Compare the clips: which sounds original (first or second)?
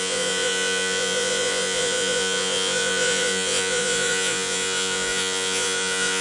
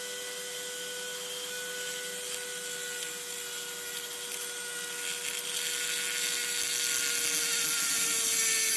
second